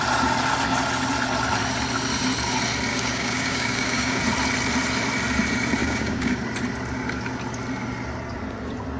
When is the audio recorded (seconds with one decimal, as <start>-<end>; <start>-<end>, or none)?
0.0-2.9; 4.2-5.8; 6.4-9.0